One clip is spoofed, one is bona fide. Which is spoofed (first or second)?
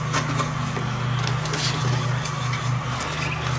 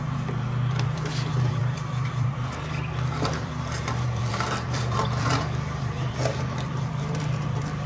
second